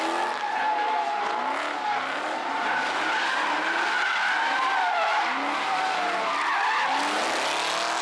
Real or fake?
real